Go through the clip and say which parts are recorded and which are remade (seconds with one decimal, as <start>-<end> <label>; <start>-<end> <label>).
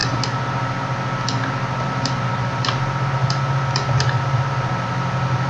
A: 0.0-5.5 recorded